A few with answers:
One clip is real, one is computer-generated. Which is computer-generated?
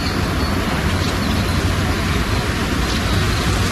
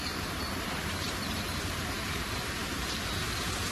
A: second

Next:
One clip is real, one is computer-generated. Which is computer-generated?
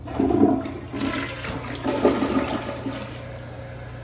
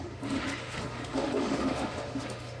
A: second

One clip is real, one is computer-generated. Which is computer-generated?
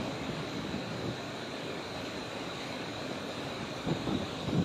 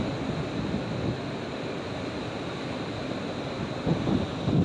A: first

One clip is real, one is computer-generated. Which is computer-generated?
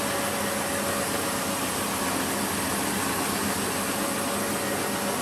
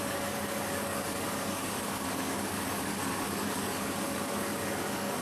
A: second